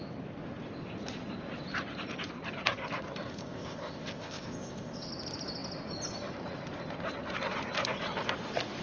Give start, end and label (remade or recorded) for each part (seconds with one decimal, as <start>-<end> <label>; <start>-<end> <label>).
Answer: 0.0-3.3 recorded; 3.3-5.1 remade; 5.1-8.8 recorded